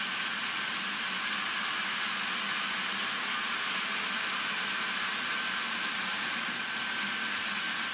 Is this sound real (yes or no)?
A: yes